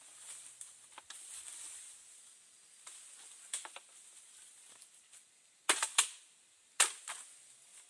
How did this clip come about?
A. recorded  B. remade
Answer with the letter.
A